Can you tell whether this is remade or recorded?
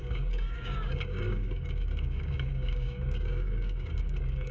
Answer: remade